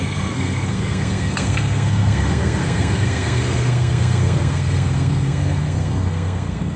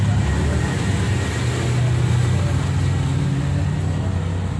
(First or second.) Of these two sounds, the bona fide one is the second